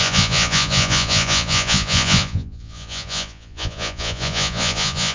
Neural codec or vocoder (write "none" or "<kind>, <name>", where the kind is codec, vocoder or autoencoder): vocoder, Vocos